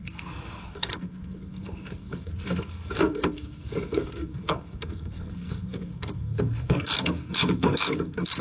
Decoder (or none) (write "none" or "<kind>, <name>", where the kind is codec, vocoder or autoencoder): codec, SNAC